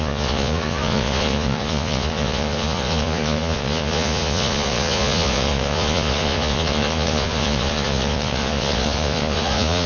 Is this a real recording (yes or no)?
no